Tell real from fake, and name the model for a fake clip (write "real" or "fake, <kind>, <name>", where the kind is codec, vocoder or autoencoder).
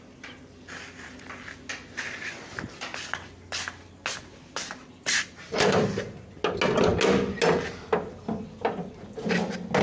real